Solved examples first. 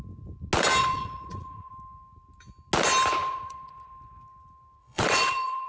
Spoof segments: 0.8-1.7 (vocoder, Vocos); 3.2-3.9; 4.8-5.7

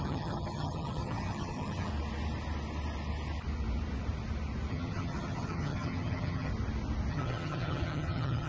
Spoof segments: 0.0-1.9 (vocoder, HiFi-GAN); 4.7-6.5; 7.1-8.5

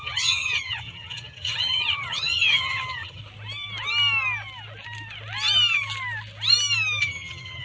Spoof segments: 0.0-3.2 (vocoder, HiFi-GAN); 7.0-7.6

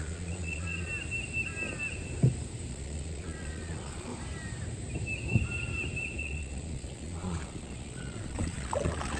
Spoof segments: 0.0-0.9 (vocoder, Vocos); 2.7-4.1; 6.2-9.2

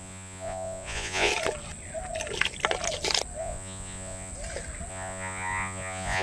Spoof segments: 0.0-1.3 (vocoder, Vocos); 3.4-4.3; 4.9-6.2

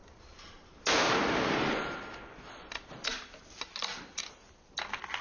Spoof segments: 0.0-2.0 (vocoder, BigVGAN v2); 3.8-4.7

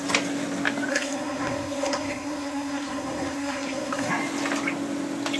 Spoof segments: 0.9-4.1 (codec, SNAC)